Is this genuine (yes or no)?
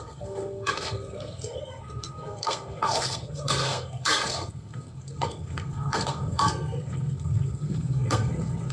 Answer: no